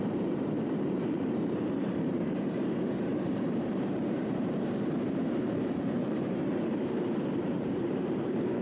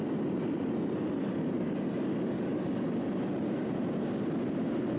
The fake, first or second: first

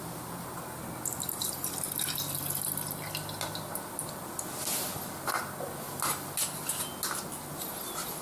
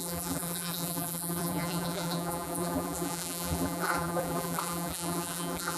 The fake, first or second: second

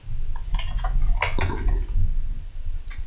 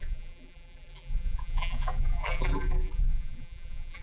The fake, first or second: second